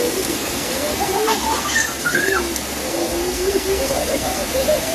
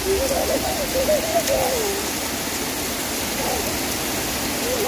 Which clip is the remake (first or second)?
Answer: first